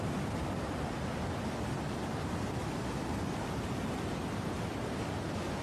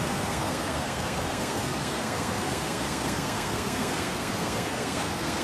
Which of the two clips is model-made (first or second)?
second